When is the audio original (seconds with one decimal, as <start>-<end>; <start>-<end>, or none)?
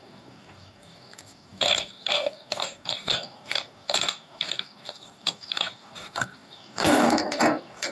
none